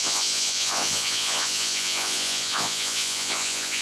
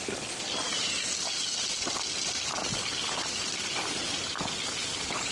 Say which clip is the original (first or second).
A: second